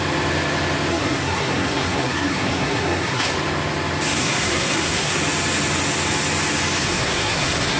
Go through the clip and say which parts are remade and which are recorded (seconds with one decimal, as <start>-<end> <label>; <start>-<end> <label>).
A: 0.0-0.9 recorded; 0.9-3.3 remade; 3.3-4.2 recorded; 4.2-5.2 remade; 5.2-6.8 recorded; 6.8-7.8 remade